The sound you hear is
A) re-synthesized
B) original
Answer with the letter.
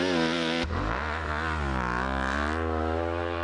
B